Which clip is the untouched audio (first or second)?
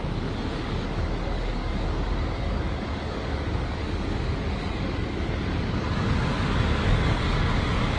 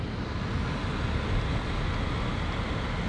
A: second